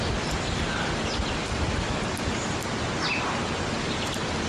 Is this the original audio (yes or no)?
yes